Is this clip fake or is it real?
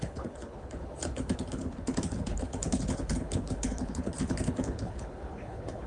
fake